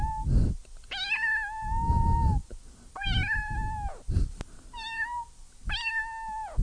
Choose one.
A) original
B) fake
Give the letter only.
A